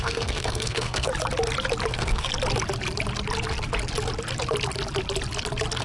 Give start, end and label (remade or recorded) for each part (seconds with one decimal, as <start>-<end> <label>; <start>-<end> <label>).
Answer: 0.0-1.1 remade; 1.1-1.9 recorded; 1.9-2.3 remade; 2.3-5.8 recorded